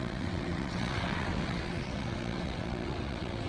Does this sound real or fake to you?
fake